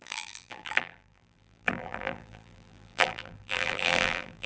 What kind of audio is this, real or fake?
fake